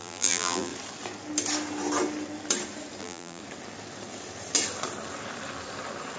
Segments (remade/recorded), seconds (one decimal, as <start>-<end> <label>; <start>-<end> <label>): 0.0-0.7 remade; 0.7-3.0 recorded; 3.0-3.4 remade; 3.4-6.2 recorded